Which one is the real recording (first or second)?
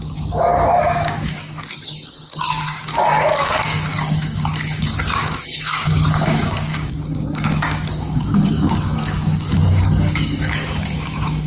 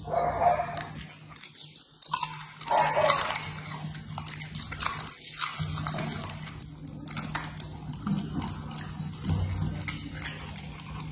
second